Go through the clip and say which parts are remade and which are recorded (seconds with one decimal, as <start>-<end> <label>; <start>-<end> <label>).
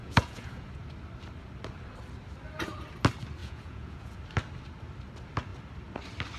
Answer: 0.0-0.7 remade; 0.7-3.4 recorded; 3.4-4.2 remade; 4.2-6.4 recorded